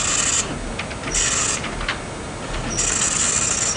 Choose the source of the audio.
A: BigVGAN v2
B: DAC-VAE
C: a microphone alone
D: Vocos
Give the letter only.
C